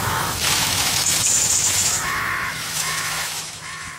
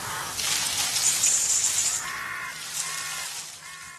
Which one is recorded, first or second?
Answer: second